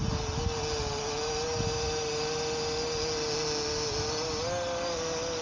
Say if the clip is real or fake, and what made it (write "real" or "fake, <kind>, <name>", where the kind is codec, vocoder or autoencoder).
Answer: real